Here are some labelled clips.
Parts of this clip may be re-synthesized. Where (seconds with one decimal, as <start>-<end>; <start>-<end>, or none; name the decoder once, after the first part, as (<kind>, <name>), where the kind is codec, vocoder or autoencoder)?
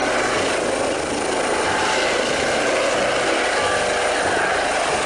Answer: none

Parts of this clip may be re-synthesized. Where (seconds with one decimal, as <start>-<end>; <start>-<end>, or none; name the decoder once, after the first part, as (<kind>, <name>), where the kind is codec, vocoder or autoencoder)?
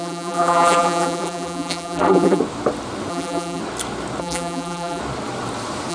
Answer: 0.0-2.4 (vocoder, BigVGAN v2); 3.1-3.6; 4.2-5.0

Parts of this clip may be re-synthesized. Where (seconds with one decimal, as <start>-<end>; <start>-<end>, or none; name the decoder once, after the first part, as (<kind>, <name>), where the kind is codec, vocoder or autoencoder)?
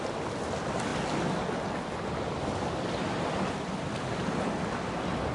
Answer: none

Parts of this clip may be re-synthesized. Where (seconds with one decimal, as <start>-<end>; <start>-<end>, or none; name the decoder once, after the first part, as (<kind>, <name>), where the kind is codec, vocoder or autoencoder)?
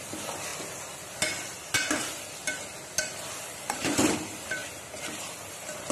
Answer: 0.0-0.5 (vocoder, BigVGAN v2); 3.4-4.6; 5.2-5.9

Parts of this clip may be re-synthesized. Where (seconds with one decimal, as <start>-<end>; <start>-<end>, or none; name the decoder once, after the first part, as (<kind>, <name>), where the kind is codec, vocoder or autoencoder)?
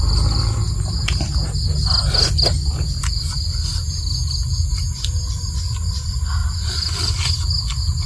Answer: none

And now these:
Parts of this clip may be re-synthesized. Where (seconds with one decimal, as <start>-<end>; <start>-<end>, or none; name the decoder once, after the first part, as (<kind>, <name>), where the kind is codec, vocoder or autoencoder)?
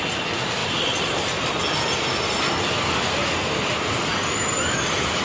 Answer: 0.6-1.5 (vocoder, BigVGAN v2); 3.2-3.9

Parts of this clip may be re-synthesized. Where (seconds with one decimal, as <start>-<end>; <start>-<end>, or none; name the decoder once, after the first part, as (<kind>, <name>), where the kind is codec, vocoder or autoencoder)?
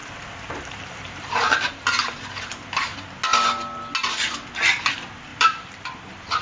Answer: 0.0-1.7 (vocoder, BigVGAN v2); 5.3-6.0